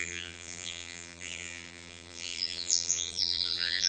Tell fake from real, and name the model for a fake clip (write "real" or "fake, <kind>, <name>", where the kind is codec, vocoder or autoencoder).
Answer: fake, vocoder, BigVGAN v2